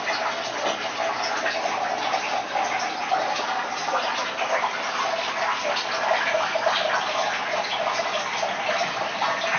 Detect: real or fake real